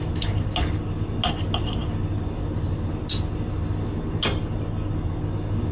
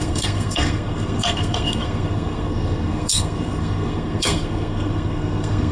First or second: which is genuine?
first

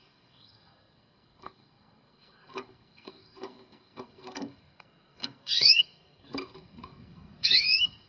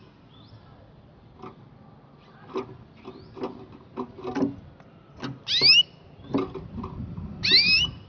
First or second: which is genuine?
second